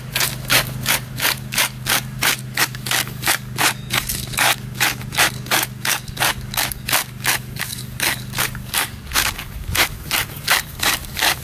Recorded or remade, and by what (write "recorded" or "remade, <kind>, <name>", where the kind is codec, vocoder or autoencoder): remade, codec, DAC